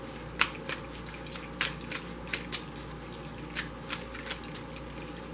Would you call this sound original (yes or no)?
yes